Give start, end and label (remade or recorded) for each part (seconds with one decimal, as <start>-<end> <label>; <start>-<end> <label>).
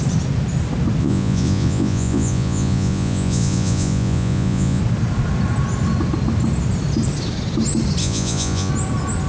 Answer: 0.0-1.0 recorded; 1.0-4.8 remade; 4.8-8.0 recorded; 8.0-8.7 remade; 8.7-9.3 recorded